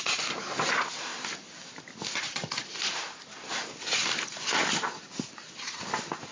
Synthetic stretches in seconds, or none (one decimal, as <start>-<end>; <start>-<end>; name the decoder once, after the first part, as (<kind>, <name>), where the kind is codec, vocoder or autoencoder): none